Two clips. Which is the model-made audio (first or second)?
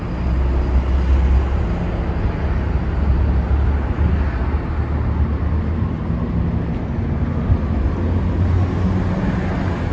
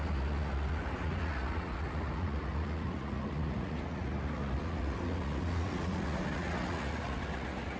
second